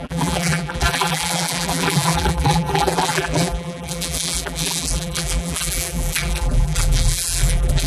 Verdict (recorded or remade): remade